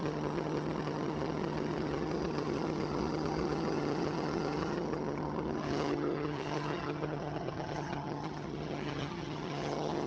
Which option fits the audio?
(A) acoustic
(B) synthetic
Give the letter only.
B